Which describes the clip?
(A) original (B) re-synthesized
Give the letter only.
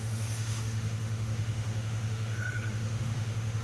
B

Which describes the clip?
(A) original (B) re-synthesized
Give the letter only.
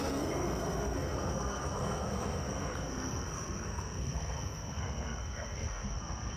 B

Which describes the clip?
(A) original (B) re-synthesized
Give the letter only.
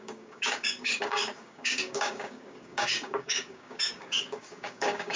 B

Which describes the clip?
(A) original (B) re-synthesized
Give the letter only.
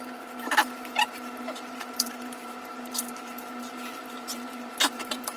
B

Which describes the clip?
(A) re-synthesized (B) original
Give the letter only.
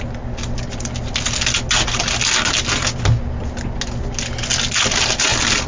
B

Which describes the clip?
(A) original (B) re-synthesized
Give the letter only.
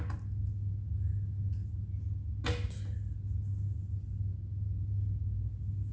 A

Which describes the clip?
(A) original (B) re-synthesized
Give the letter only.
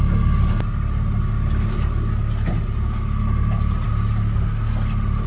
A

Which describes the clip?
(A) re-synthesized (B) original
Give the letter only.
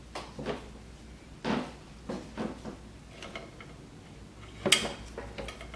B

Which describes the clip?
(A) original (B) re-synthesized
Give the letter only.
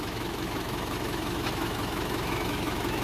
B